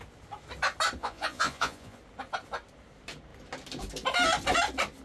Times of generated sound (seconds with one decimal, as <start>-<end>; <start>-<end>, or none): 1.0-2.0